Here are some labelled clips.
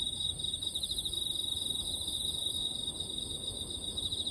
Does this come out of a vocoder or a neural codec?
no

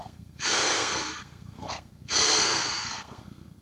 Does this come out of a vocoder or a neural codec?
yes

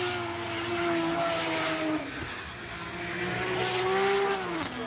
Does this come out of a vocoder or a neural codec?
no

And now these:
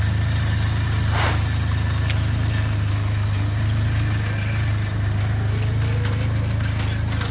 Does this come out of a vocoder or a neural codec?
no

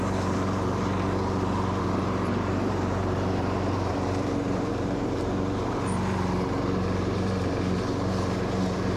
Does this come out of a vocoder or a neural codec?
yes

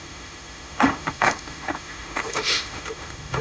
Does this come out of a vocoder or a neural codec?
yes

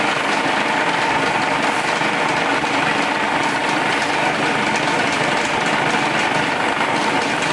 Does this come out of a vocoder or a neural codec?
no